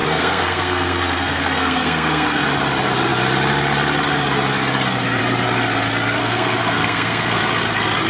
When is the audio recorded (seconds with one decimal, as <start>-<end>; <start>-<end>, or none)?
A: 2.4-6.2; 7.4-8.1